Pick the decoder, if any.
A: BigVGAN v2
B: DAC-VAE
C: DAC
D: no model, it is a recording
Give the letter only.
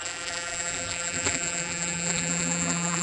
A